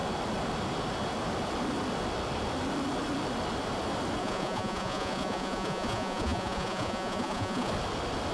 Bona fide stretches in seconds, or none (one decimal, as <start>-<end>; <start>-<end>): 0.0-4.2; 7.7-8.3